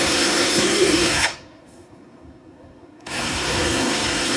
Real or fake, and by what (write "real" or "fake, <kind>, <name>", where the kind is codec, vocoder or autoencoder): fake, codec, SNAC